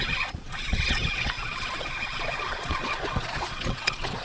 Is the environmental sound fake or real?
fake